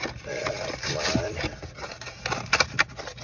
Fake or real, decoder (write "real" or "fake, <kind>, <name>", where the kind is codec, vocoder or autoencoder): real